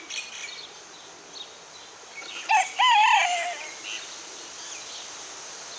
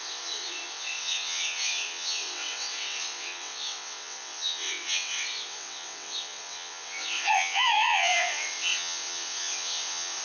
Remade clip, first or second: second